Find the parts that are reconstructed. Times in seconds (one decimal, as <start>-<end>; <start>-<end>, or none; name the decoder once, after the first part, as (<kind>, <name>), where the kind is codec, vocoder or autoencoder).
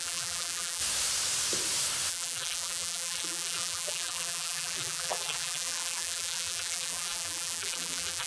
0.0-0.8 (vocoder, BigVGAN v2); 2.1-8.3